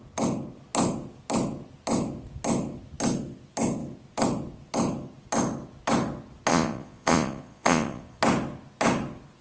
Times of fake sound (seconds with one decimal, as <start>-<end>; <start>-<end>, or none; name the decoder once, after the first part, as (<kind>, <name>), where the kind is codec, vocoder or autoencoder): 6.5-8.2 (vocoder, Vocos)